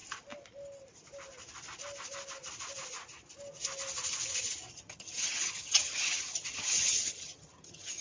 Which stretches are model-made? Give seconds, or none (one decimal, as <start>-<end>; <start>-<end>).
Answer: 4.7-8.0